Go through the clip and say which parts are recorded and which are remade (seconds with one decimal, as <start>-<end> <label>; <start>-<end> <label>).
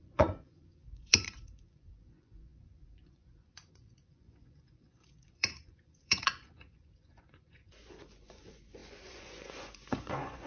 0.0-10.5 remade